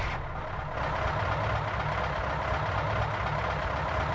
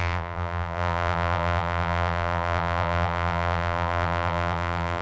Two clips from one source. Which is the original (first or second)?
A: first